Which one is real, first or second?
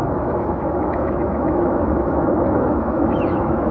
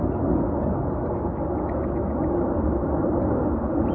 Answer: second